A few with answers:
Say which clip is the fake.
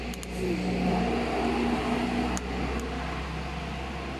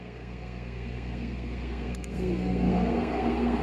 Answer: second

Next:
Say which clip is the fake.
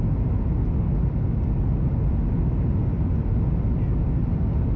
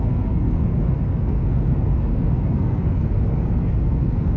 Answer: second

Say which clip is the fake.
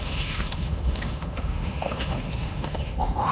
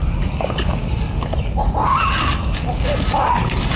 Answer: first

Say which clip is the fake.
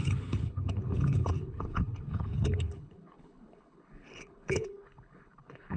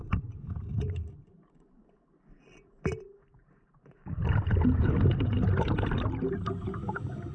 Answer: first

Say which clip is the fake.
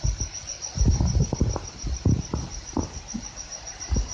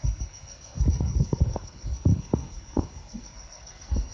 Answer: second